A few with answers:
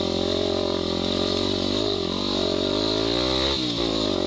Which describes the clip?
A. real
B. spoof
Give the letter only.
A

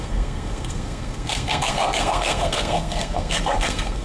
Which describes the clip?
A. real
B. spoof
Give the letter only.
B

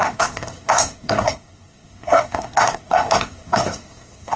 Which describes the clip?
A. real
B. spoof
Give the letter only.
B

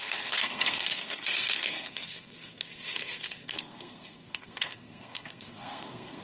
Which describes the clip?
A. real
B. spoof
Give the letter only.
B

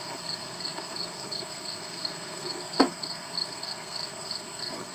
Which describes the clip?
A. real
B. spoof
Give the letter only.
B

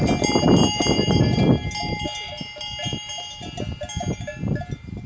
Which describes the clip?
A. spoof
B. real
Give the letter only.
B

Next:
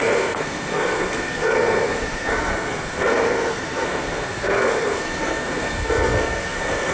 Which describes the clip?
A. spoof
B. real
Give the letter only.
A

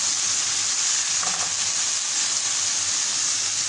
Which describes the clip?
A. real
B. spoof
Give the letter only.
A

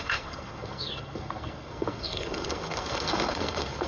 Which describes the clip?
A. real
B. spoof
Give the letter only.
B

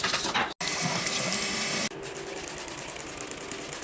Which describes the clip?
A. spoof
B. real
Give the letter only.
B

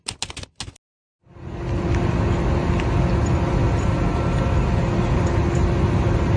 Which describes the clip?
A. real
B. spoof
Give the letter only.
A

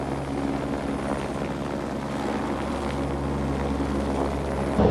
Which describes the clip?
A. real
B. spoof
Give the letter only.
A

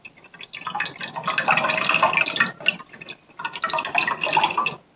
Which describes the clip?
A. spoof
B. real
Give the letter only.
B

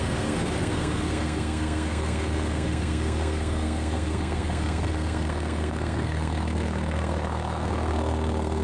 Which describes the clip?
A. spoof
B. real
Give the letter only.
A